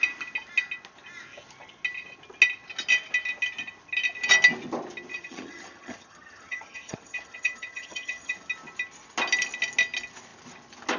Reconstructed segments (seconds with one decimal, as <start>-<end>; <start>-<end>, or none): 5.1-8.5